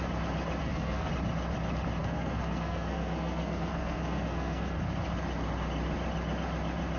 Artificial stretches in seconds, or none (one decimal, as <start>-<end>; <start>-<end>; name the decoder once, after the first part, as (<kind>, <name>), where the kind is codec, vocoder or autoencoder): 0.6-1.1 (codec, SNAC); 2.0-4.8